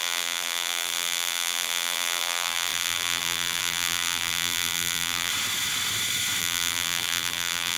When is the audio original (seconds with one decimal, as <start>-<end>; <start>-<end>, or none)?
5.3-6.4